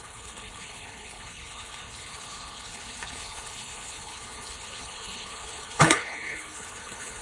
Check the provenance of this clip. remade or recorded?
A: remade